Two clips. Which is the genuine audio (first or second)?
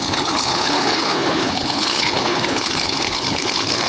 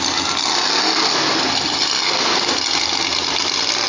second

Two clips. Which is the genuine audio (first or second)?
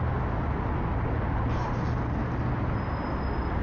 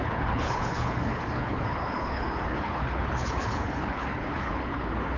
first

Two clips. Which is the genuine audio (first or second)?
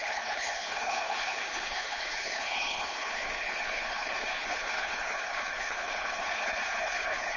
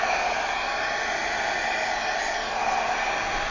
second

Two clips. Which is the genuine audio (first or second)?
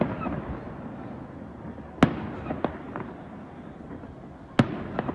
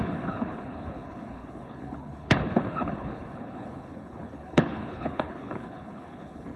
first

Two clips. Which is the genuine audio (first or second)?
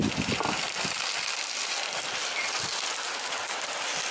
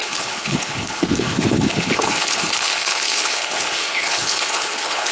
first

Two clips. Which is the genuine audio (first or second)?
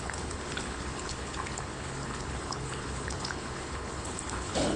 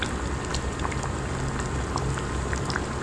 second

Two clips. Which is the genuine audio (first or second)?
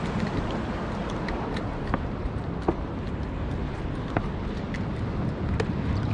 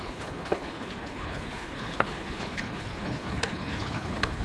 first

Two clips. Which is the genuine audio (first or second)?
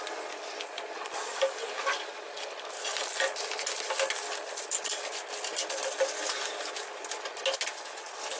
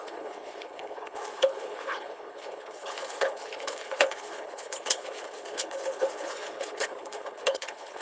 first